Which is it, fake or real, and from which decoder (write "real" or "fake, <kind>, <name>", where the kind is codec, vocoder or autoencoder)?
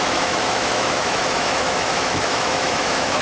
fake, autoencoder, DAC-VAE